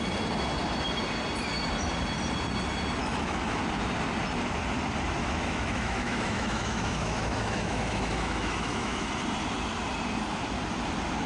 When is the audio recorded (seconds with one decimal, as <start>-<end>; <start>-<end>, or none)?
0.0-3.0; 3.6-5.2; 9.1-11.3